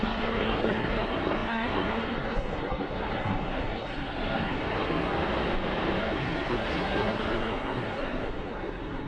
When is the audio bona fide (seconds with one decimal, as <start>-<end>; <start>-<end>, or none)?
5.1-6.0